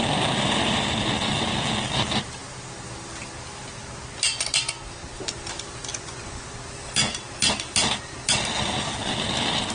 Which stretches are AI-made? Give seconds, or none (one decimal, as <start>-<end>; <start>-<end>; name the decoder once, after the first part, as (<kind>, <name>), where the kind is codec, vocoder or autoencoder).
5.9-6.5 (vocoder, Vocos)